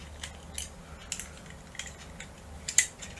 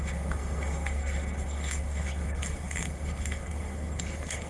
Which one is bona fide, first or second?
first